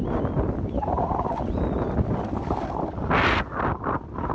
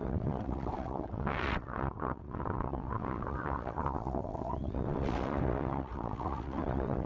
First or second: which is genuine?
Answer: first